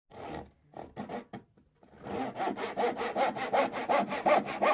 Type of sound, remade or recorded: recorded